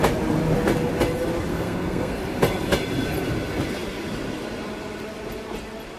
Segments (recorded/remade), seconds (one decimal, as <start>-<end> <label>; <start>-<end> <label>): 0.0-1.5 recorded; 1.5-2.2 remade; 2.2-6.0 recorded